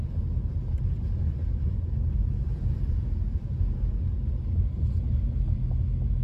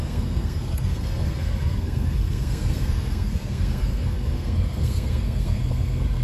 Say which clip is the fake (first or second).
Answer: second